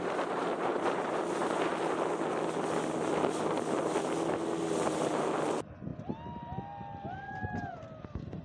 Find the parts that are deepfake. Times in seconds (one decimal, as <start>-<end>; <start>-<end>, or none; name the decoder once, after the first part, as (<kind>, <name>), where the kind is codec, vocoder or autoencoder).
0.4-1.7 (vocoder, BigVGAN v2)